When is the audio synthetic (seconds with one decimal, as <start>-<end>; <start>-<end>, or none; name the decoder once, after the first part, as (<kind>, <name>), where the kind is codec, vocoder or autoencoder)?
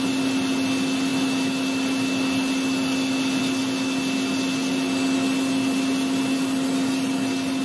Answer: none